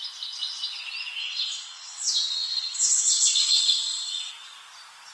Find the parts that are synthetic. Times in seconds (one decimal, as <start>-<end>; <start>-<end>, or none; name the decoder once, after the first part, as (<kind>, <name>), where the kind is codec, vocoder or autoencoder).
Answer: 1.2-4.3 (vocoder, WaveNeXt)